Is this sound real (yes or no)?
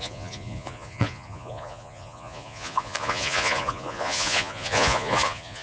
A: no